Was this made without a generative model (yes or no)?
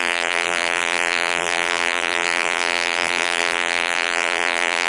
no